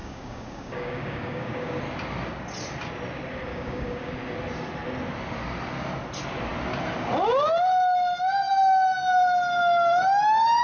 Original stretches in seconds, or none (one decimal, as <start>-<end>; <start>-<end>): 1.8-3.5; 4.1-10.6